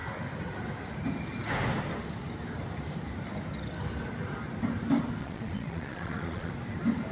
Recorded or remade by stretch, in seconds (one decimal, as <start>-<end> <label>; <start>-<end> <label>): 0.0-5.2 recorded; 5.2-6.5 remade; 6.5-7.1 recorded